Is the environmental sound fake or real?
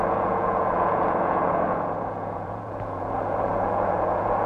fake